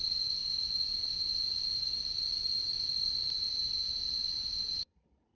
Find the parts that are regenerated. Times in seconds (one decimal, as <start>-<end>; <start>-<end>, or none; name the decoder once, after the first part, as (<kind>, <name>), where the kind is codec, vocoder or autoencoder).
0.4-3.6 (vocoder, BigVGAN v2); 4.2-5.3